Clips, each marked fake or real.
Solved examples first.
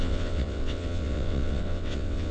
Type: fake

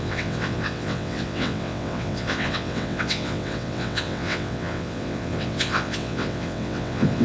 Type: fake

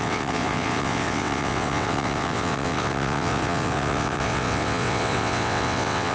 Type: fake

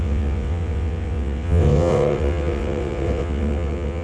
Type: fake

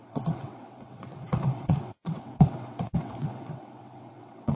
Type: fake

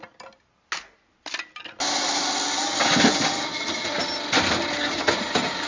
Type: real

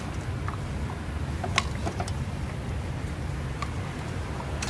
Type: real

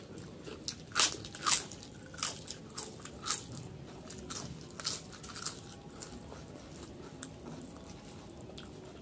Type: real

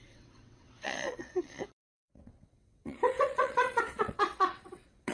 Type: fake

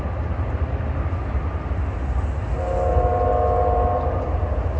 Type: real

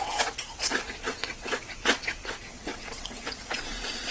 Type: fake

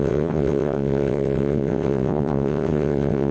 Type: fake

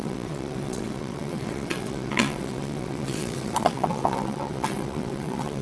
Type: fake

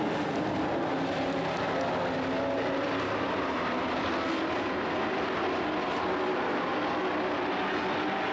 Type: real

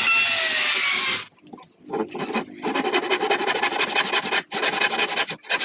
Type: real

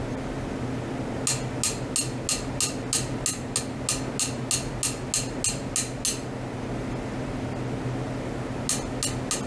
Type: real